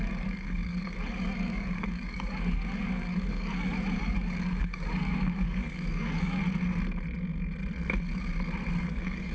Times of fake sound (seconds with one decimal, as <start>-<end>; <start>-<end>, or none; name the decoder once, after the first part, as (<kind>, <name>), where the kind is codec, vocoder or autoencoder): 0.0-6.4 (codec, DAC); 8.8-9.3